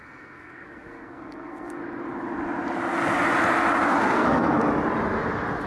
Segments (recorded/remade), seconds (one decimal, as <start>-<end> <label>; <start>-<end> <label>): 0.0-1.8 remade; 1.8-4.0 recorded; 4.0-4.6 remade; 4.6-5.7 recorded